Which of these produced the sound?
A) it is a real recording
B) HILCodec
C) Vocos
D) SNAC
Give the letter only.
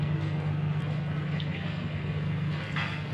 D